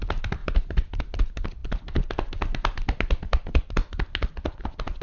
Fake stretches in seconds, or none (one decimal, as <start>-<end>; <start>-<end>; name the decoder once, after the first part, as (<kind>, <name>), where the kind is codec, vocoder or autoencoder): none